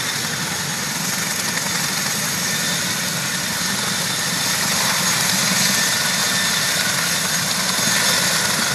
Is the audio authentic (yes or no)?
yes